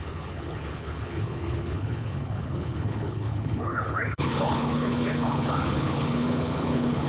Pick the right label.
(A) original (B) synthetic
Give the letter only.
B